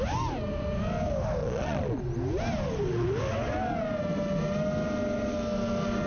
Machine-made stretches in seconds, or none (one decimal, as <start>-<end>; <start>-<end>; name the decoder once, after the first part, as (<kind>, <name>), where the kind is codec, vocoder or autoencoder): 1.4-2.0 (vocoder, Vocos)